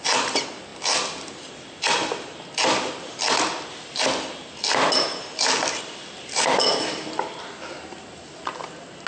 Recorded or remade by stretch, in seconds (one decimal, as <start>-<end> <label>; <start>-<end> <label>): 0.0-9.1 recorded